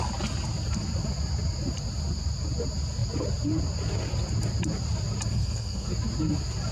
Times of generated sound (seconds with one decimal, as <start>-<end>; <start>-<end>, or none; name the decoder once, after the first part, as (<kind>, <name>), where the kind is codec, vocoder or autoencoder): 5.3-5.9 (codec, SNAC)